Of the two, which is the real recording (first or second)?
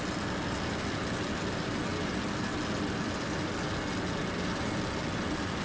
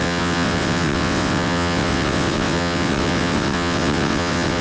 first